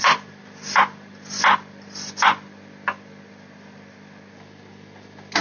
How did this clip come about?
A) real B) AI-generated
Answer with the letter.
A